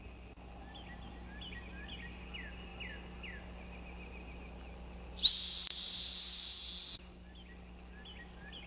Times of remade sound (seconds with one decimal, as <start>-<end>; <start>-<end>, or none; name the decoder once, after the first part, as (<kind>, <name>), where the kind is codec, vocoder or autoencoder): none